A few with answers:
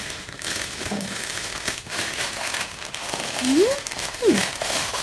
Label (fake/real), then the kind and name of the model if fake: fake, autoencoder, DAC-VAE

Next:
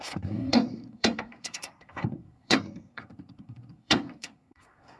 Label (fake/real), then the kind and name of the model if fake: fake, codec, SNAC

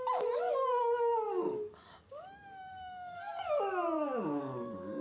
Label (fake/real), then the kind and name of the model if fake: fake, codec, DAC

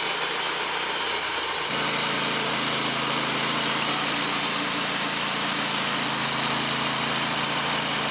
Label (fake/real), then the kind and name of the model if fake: real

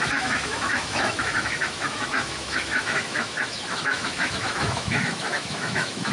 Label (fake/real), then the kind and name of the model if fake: fake, autoencoder, DAC-VAE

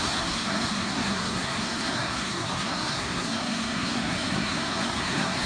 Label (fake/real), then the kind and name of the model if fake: fake, codec, SNAC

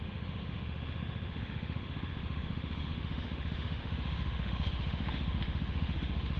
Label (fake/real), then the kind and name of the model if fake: fake, autoencoder, DAC-VAE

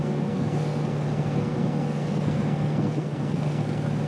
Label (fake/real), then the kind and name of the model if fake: fake, codec, SNAC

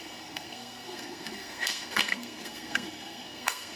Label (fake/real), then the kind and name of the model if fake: fake, codec, SNAC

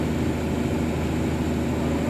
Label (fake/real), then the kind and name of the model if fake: real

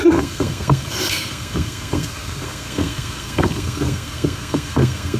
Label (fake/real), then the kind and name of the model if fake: fake, codec, SNAC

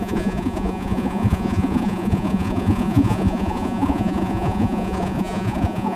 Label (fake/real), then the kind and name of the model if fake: fake, vocoder, Vocos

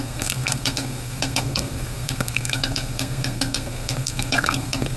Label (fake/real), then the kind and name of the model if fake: fake, codec, SNAC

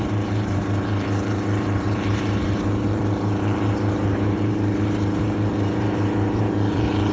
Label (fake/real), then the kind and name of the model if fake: fake, vocoder, BigVGAN v2